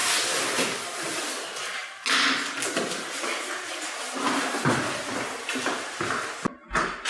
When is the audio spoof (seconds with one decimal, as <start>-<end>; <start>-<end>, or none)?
none